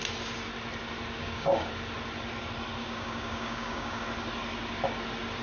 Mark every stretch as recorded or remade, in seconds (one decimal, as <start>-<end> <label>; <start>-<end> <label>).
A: 0.0-1.2 recorded; 1.2-1.7 remade; 1.7-2.8 recorded; 2.8-4.0 remade; 4.0-5.4 recorded